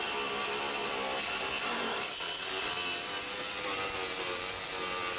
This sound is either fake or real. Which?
real